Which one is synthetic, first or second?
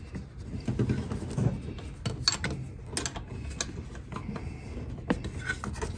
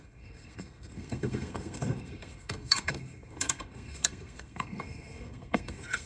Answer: second